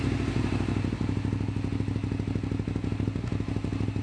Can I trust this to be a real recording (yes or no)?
yes